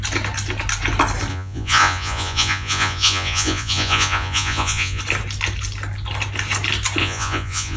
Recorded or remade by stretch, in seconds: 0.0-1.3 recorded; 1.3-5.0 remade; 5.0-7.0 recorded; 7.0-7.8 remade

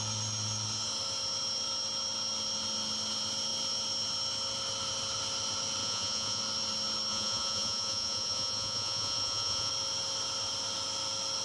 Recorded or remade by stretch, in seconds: 0.0-5.8 recorded; 5.8-6.4 remade; 6.4-7.1 recorded; 7.1-9.7 remade; 9.7-11.4 recorded

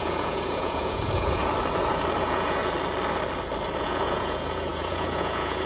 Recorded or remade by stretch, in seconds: 0.0-1.4 remade; 1.4-2.2 recorded; 2.2-2.6 remade; 2.6-3.8 recorded; 3.8-5.7 remade